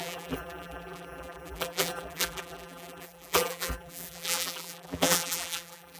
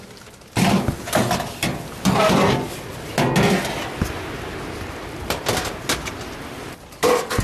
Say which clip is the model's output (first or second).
first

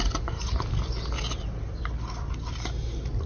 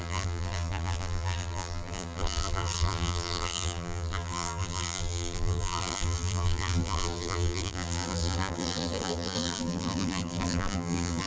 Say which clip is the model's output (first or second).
second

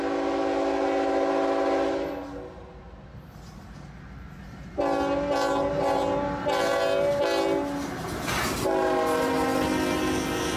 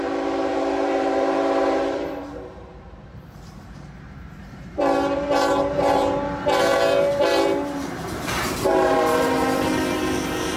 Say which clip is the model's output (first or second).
second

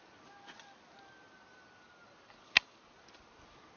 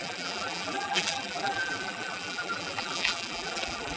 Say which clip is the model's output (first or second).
second